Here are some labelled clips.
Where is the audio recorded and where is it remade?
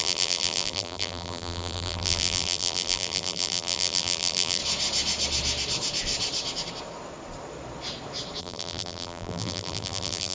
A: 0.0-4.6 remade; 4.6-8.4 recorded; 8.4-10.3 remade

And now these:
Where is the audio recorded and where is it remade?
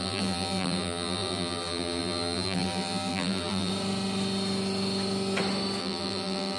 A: 0.0-3.7 remade; 3.7-5.8 recorded; 5.8-6.6 remade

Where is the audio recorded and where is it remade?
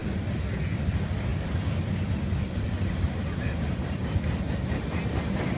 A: 0.0-1.3 recorded; 1.3-4.5 remade; 4.5-5.6 recorded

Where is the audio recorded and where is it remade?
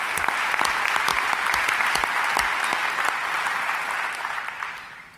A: 0.0-5.2 recorded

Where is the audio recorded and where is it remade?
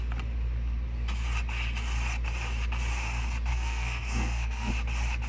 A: 0.0-3.5 recorded; 3.5-4.7 remade; 4.7-5.3 recorded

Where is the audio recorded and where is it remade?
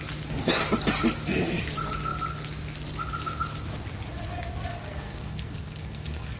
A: 0.0-4.7 recorded; 4.7-6.4 remade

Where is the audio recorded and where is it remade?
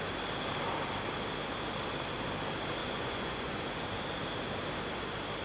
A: 0.0-2.8 recorded; 2.8-3.8 remade; 3.8-5.4 recorded